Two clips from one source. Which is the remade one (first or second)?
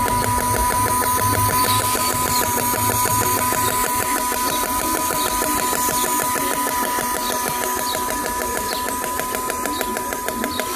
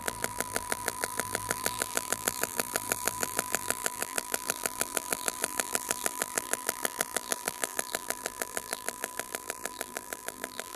second